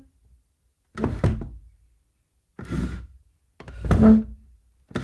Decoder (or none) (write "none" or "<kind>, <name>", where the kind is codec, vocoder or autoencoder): none